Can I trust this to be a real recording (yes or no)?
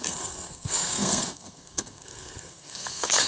no